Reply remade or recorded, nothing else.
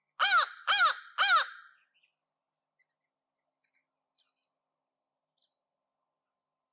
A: recorded